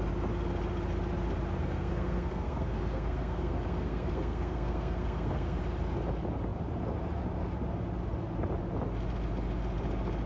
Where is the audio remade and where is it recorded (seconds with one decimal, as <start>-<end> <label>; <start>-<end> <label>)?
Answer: 0.0-1.6 recorded; 1.6-5.6 remade; 5.6-10.3 recorded